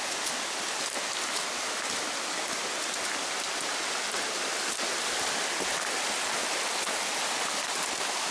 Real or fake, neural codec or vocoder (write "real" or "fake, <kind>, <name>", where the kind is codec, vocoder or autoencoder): real